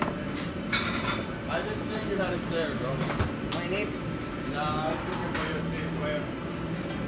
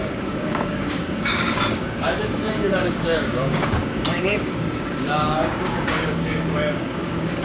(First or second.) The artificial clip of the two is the second